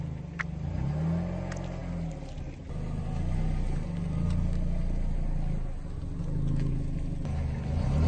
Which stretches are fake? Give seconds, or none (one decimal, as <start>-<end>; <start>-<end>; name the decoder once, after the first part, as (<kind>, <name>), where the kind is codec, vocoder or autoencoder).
none